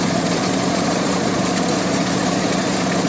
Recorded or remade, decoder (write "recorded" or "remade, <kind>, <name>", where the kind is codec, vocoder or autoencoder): remade, vocoder, Vocos